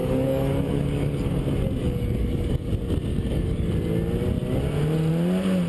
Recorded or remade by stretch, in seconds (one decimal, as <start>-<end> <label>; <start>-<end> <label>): 0.0-1.4 remade; 1.4-1.8 recorded; 1.8-2.7 remade; 2.7-3.1 recorded; 3.1-3.7 remade; 3.7-5.7 recorded